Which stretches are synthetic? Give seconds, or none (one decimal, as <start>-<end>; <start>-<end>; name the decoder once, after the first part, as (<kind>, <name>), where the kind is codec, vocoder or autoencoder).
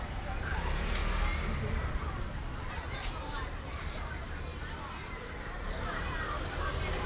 0.0-1.0 (vocoder, BigVGAN v2); 1.7-3.0; 3.7-7.1